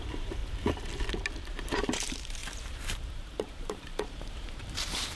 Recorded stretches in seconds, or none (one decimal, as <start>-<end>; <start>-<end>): 0.4-1.3